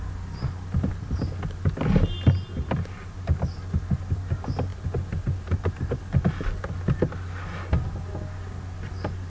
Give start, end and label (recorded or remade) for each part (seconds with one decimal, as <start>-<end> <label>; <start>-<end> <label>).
0.0-9.3 recorded